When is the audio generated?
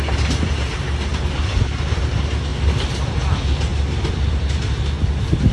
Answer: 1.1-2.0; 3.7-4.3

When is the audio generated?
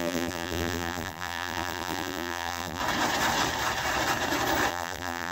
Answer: 0.0-2.8; 4.7-5.3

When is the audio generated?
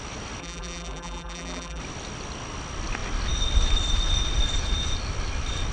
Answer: 0.4-1.8